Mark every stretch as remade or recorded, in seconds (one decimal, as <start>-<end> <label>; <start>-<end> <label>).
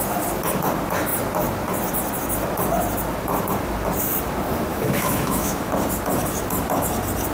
0.0-4.7 recorded; 4.7-5.7 remade; 5.7-7.3 recorded